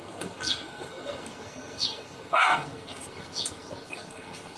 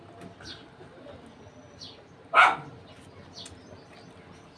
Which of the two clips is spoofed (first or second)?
first